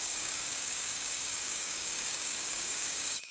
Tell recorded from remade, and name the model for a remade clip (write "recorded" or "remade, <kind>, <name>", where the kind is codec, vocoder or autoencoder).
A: remade, codec, DAC